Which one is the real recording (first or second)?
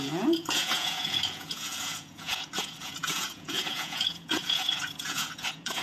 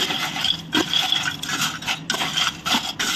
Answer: second